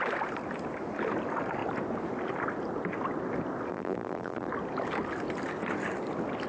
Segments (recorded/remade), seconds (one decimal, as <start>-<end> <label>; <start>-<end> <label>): 0.0-3.7 recorded; 3.7-4.5 remade; 4.5-6.5 recorded